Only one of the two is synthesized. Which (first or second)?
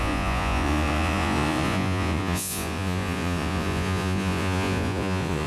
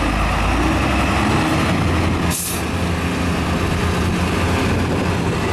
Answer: first